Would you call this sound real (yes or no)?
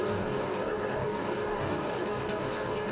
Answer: no